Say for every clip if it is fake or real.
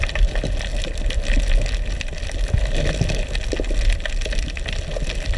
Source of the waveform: real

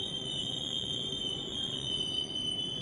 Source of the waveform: fake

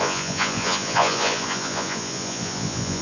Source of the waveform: fake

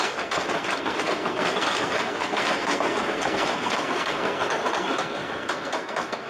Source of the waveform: fake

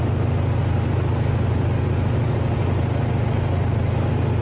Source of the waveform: real